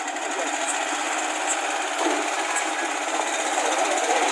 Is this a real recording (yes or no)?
yes